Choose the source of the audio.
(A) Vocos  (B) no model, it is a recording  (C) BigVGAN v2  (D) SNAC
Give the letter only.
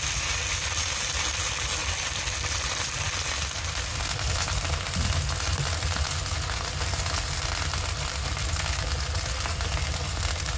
B